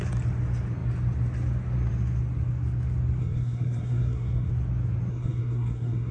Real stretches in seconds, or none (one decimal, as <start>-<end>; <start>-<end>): 0.0-3.2; 4.5-5.1